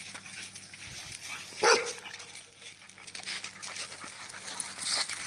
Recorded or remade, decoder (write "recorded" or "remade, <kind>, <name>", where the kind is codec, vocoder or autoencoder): recorded